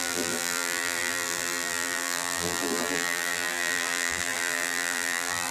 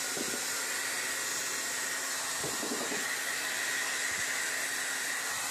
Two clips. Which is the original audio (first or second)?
second